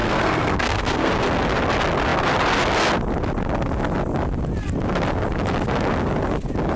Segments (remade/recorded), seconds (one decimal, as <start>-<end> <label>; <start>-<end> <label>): 0.0-1.1 remade; 1.1-6.8 recorded